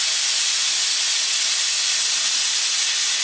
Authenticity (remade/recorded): recorded